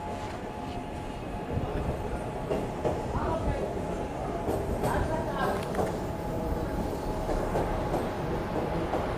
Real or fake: real